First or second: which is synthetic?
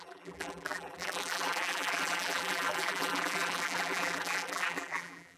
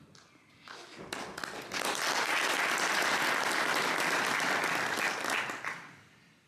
first